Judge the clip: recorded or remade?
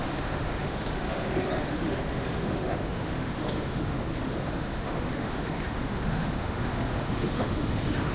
remade